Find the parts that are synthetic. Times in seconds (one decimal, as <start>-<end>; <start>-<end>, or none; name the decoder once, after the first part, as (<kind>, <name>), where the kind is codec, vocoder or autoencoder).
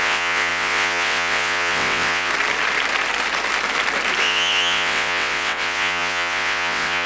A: 0.0-2.3 (vocoder, WaveNeXt); 4.2-7.1